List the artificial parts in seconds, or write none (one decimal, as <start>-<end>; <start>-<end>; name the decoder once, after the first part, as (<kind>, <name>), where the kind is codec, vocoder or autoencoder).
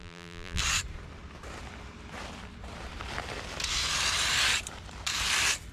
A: 0.0-0.6 (vocoder, BigVGAN v2)